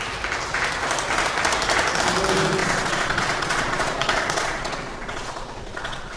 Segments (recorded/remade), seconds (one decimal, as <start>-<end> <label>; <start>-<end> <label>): 0.0-2.6 recorded; 2.6-6.2 remade